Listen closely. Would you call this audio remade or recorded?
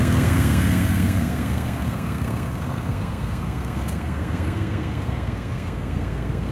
remade